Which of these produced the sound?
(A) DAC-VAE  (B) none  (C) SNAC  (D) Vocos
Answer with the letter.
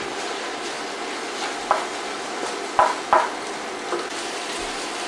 B